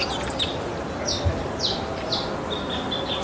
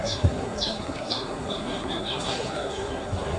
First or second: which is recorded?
first